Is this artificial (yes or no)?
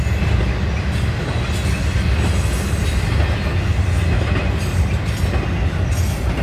no